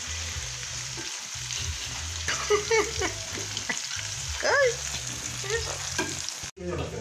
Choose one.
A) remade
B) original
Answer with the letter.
B